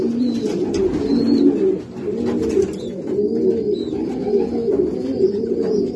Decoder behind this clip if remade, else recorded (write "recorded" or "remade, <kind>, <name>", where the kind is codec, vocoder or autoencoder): recorded